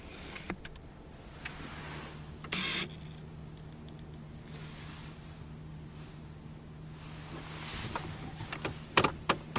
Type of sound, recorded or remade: recorded